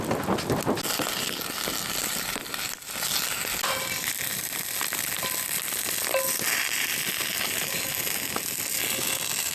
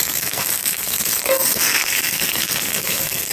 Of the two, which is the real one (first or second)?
first